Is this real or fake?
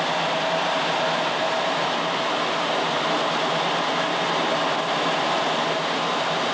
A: real